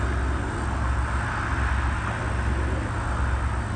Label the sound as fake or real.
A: real